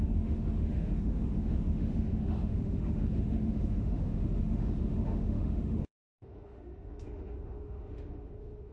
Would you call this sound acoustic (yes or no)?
no